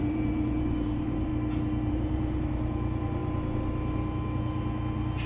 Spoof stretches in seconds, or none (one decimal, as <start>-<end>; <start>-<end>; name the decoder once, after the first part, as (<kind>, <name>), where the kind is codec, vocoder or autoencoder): 0.0-1.3 (vocoder, BigVGAN v2); 1.9-3.2